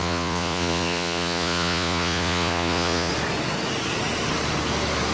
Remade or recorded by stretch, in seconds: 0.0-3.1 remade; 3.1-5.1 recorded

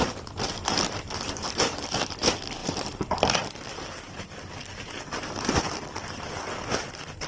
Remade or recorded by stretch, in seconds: 0.0-7.3 remade

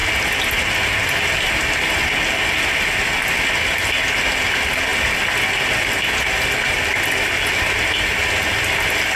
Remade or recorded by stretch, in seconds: 0.0-9.2 recorded

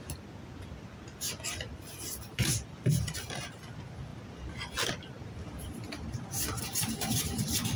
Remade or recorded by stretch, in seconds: 0.0-7.8 recorded

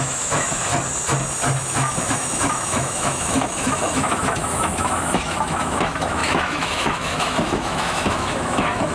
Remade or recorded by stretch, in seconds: 0.0-0.7 remade; 0.7-1.6 recorded; 1.6-8.9 remade